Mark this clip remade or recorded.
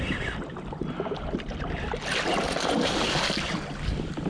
recorded